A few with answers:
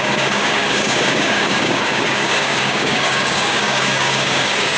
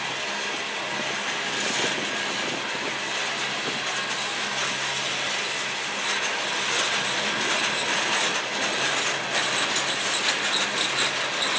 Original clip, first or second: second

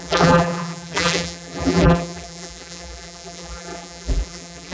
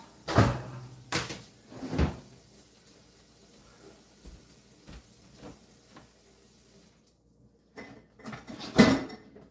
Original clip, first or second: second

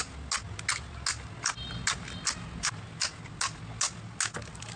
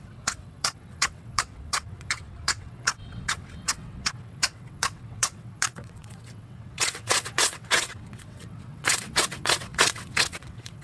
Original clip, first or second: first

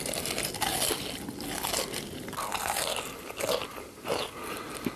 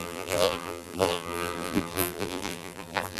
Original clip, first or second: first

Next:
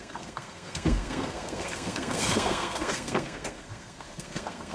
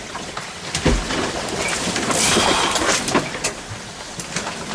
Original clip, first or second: second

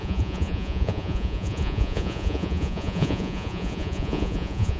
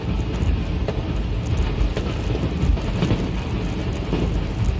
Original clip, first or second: second